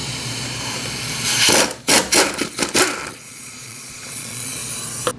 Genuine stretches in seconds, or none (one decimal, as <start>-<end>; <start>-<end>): 0.0-3.1; 4.6-5.2